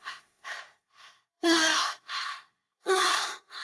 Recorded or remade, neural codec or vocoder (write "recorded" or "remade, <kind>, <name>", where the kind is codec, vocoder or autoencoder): remade, codec, SNAC